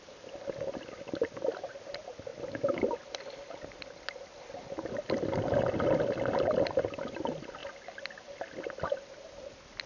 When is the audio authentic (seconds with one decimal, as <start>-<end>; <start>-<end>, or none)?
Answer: 0.0-9.9